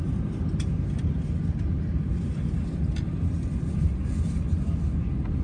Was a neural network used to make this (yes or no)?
no